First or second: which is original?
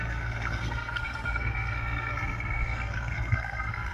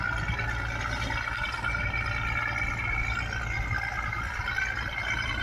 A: second